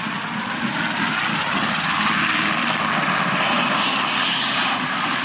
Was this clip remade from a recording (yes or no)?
no